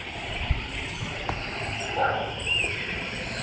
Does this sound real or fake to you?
real